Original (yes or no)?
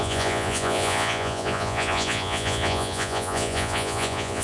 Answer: no